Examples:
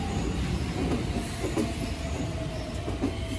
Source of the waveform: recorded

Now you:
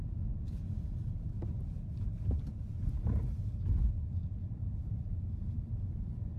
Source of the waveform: remade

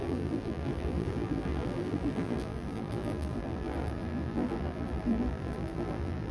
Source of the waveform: remade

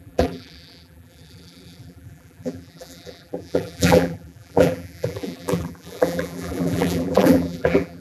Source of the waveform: remade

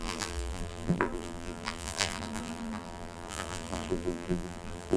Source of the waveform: remade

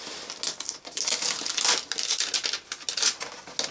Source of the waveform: recorded